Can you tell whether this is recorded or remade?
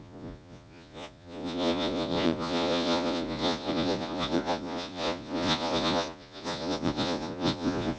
remade